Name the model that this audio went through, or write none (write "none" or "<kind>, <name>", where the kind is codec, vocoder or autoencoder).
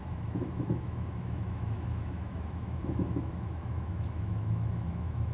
autoencoder, DAC-VAE